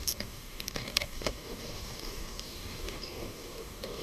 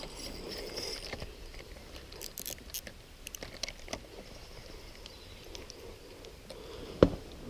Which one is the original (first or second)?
second